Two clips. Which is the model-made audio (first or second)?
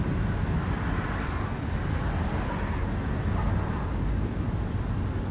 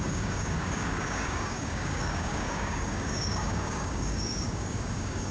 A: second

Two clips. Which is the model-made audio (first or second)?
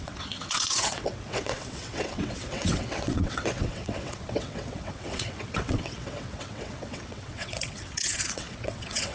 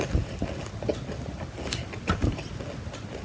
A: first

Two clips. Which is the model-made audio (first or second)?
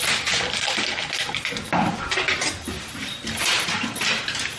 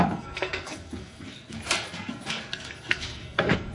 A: second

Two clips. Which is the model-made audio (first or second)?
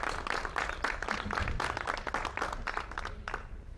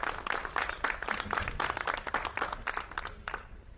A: second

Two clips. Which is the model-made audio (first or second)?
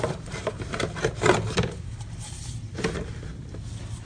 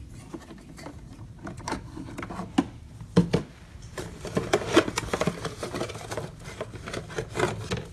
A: first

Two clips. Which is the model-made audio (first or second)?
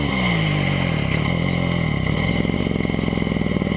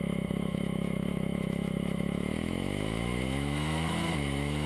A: second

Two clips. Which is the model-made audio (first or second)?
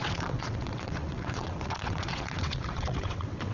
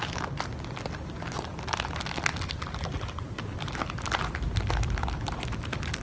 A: first